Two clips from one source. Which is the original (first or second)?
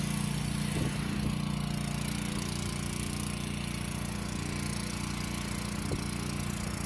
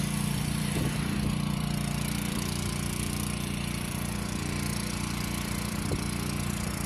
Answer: first